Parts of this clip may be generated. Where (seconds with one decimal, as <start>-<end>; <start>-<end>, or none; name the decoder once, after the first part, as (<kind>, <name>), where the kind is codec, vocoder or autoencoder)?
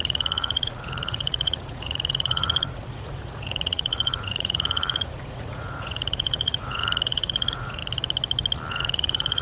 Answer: 0.0-7.8 (vocoder, Vocos); 8.7-9.4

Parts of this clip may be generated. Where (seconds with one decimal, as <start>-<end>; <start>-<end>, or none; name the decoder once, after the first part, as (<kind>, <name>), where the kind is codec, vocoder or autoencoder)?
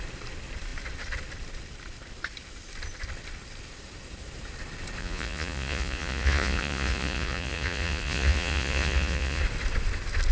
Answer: 5.0-9.4 (vocoder, Vocos)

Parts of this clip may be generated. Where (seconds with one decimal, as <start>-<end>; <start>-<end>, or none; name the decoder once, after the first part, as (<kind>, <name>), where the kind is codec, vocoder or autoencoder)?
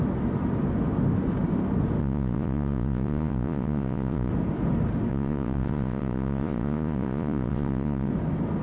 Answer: 2.0-4.3 (vocoder, Vocos); 5.1-8.1